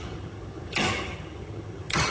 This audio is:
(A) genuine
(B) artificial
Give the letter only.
B